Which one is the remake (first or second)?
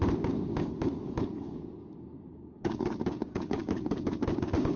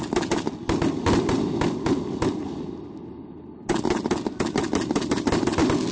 first